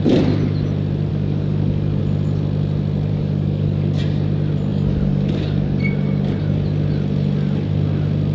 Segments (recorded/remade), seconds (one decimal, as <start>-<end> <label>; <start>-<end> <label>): 0.0-1.1 recorded; 1.1-2.0 remade; 2.0-3.1 recorded; 3.1-4.0 remade; 4.0-4.7 recorded; 4.7-5.8 remade; 5.8-8.3 recorded